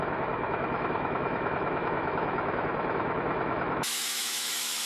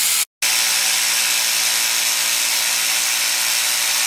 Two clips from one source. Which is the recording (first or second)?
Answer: second